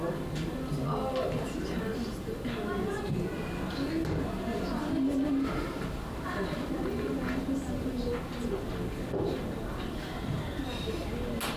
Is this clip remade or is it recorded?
recorded